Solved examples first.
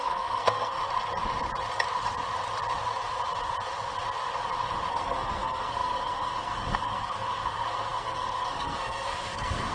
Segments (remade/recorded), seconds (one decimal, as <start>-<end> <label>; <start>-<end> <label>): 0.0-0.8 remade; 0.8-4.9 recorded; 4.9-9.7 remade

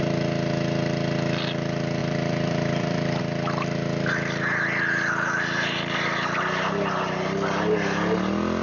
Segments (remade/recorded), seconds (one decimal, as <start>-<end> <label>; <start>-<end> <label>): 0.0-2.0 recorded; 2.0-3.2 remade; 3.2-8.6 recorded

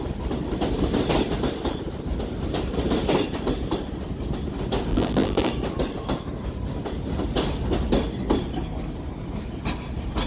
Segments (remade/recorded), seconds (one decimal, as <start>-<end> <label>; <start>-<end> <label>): 0.0-4.9 recorded; 4.9-5.5 remade; 5.5-10.3 recorded

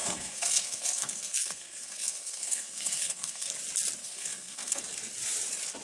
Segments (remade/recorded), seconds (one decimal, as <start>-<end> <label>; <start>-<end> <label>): 0.0-3.5 remade; 3.5-4.0 recorded; 4.0-4.8 remade; 4.8-5.8 recorded

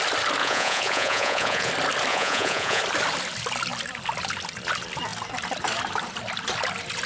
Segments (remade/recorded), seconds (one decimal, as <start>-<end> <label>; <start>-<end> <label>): 0.0-0.4 recorded; 0.4-1.7 remade; 1.7-2.1 recorded; 2.1-2.8 remade; 2.8-7.1 recorded